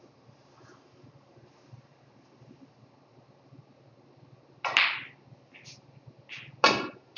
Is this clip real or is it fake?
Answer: real